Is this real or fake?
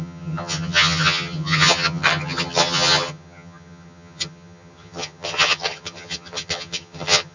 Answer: fake